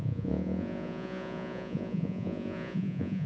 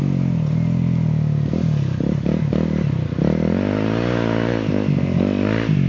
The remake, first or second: first